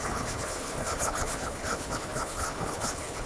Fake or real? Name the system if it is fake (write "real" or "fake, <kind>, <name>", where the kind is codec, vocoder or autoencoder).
fake, codec, HILCodec